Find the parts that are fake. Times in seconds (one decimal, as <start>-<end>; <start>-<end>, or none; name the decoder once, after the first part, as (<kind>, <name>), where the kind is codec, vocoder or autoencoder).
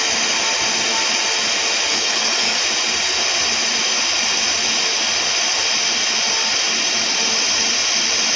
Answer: 1.9-2.6 (codec, DAC)